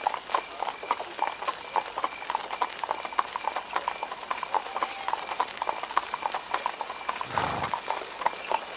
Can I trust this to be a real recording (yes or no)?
yes